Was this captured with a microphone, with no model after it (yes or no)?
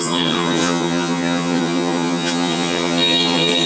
no